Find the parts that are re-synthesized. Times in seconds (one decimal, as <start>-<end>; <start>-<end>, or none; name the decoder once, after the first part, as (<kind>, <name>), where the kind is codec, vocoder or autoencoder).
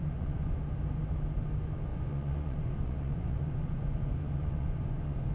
0.0-0.6 (vocoder, Vocos); 1.9-5.3